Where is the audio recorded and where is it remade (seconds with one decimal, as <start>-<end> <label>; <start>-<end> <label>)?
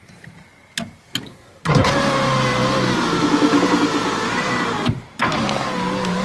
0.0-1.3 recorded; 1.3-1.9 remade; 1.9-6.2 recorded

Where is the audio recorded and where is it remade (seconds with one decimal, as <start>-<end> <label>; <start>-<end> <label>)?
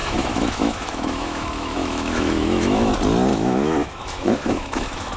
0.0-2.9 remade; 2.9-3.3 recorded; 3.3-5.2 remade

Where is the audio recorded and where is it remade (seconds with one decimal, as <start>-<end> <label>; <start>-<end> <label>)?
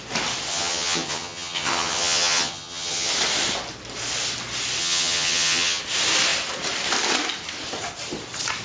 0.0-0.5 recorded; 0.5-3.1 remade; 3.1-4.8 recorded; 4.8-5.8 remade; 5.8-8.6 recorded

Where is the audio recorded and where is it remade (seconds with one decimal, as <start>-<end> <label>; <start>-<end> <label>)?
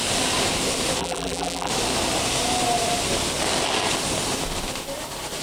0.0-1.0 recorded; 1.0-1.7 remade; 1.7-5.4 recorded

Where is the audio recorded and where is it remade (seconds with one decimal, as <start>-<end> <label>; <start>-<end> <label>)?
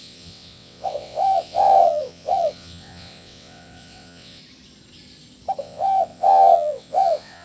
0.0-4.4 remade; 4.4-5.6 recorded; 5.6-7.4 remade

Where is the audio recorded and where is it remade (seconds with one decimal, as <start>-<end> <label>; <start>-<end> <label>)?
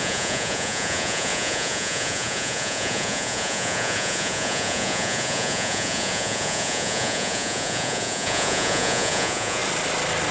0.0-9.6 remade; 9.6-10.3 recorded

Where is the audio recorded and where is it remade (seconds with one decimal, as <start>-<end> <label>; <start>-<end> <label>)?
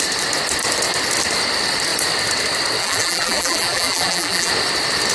0.0-2.8 recorded; 2.8-4.5 remade; 4.5-5.1 recorded